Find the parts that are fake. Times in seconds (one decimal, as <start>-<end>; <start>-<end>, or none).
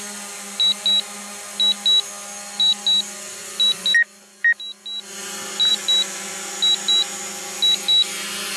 none